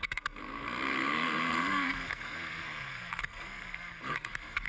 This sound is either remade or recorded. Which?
remade